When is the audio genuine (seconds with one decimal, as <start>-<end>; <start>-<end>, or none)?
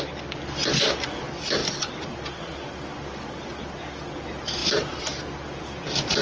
0.0-6.2